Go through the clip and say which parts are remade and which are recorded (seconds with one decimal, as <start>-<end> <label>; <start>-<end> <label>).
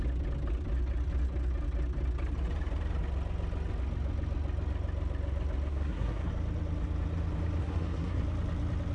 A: 0.0-5.7 recorded; 5.7-6.3 remade; 6.3-7.6 recorded; 7.6-8.2 remade; 8.2-8.9 recorded